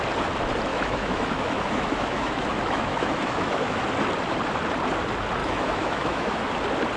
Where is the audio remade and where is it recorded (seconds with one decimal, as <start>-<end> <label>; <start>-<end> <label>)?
0.0-0.7 recorded; 0.7-3.8 remade; 3.8-5.4 recorded; 5.4-6.5 remade; 6.5-7.0 recorded